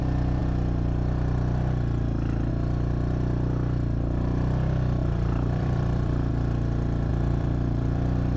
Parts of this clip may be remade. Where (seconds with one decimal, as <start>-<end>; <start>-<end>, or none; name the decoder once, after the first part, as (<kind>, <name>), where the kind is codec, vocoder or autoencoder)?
5.0-6.3 (vocoder, BigVGAN v2); 7.1-8.4